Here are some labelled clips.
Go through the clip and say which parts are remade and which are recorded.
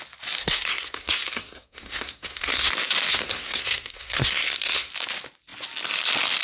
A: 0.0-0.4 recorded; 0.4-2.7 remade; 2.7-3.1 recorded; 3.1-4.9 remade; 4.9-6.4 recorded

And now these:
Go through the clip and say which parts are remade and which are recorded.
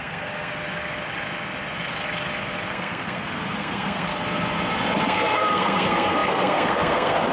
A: 0.0-0.5 remade; 0.5-2.7 recorded; 2.7-4.1 remade; 4.1-5.0 recorded; 5.0-7.3 remade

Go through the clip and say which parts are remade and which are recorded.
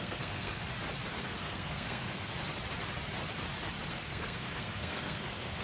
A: 0.0-0.6 remade; 0.6-1.2 recorded; 1.2-2.3 remade; 2.3-3.9 recorded; 3.9-5.6 remade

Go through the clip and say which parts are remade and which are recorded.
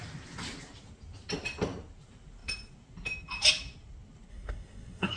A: 0.0-4.3 recorded; 4.3-5.2 remade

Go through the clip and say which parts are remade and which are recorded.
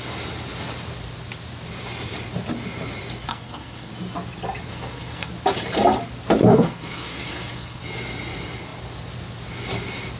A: 0.0-3.3 recorded; 3.3-3.9 remade; 3.9-4.7 recorded; 4.7-5.3 remade; 5.3-6.4 recorded; 6.4-7.8 remade; 7.8-10.2 recorded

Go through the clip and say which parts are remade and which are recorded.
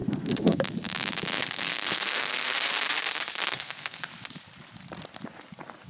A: 0.0-0.6 remade; 0.6-1.4 recorded; 1.4-2.2 remade; 2.2-3.4 recorded; 3.4-4.0 remade; 4.0-5.9 recorded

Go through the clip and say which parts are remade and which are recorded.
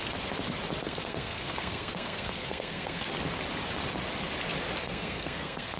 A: 0.0-0.8 recorded; 0.8-3.1 remade; 3.1-4.8 recorded; 4.8-5.8 remade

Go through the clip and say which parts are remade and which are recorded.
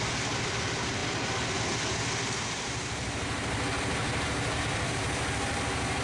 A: 0.0-6.0 recorded